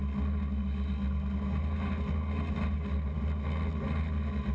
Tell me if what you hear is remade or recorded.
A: recorded